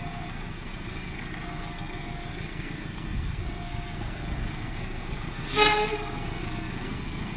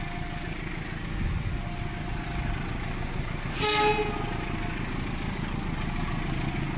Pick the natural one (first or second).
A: second